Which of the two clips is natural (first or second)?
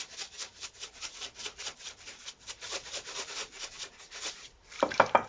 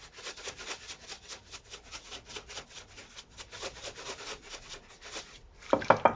second